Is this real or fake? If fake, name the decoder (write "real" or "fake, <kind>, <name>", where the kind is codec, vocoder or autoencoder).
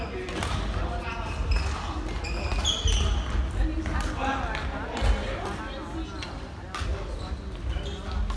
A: real